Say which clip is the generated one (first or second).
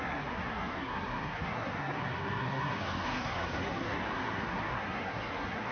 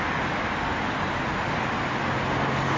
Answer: first